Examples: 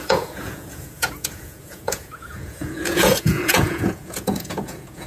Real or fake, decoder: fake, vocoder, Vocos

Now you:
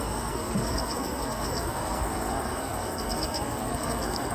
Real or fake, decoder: fake, codec, SNAC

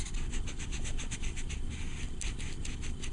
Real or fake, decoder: real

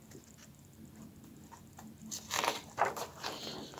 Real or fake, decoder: real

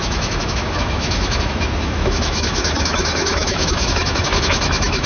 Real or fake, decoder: fake, autoencoder, DAC-VAE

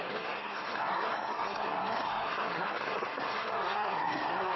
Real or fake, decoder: fake, codec, SNAC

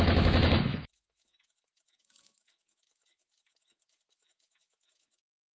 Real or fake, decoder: fake, autoencoder, DAC-VAE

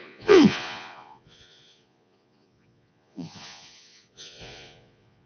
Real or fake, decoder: fake, vocoder, Vocos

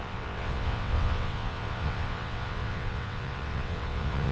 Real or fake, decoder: fake, vocoder, WaveNeXt